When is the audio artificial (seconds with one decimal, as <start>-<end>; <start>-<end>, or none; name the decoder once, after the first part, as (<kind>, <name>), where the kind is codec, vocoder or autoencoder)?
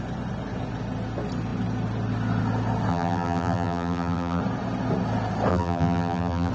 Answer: 2.9-4.4 (vocoder, BigVGAN v2); 5.5-6.5